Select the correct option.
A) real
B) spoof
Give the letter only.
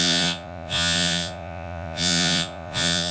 B